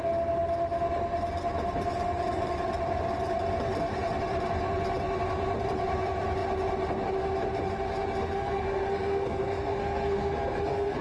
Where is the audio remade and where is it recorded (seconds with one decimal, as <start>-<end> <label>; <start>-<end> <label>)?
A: 0.0-8.2 recorded; 8.2-11.0 remade

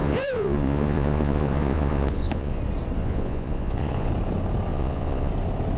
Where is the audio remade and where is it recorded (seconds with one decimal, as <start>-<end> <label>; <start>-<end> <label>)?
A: 0.0-2.6 remade; 2.6-3.0 recorded; 3.0-4.1 remade; 4.1-4.7 recorded; 4.7-5.3 remade; 5.3-5.8 recorded